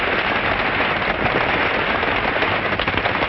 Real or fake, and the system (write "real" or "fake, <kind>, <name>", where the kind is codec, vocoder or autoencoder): real